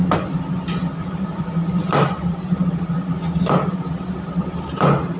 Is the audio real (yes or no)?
yes